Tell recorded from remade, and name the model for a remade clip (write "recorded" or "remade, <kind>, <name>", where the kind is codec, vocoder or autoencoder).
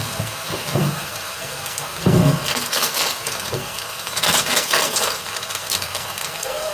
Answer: remade, codec, SNAC